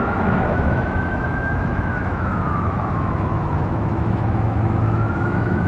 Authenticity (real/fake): fake